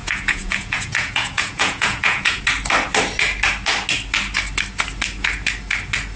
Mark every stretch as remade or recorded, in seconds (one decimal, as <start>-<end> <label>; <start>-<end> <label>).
0.0-2.4 remade; 2.4-6.2 recorded